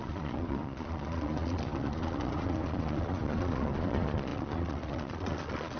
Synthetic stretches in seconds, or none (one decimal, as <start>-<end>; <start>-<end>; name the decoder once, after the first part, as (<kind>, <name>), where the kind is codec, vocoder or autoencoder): 0.0-5.8 (vocoder, Vocos)